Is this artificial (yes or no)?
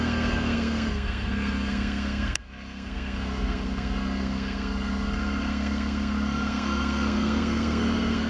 yes